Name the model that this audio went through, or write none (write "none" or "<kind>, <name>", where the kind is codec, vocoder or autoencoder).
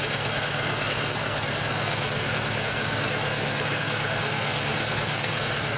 codec, SNAC